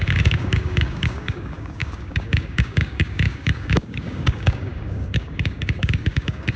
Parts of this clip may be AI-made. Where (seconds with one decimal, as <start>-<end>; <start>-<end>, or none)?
0.0-6.6

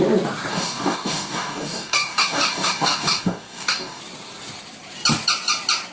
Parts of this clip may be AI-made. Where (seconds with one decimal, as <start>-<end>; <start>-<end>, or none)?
0.5-4.0

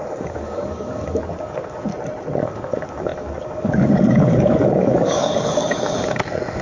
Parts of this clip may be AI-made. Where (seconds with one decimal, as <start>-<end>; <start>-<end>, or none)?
0.0-1.9; 2.4-6.6

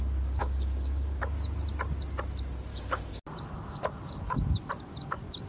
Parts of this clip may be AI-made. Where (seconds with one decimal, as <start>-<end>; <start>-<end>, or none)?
0.4-1.2; 2.7-3.2

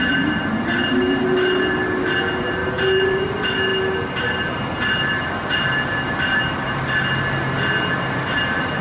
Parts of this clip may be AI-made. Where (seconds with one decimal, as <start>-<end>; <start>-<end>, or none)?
none